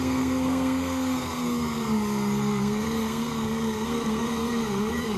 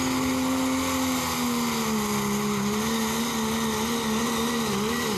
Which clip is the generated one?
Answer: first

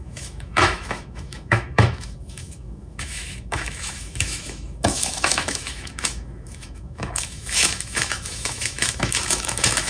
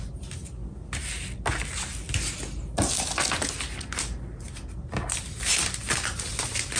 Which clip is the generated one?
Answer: first